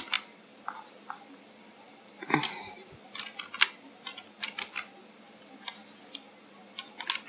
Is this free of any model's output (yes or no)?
yes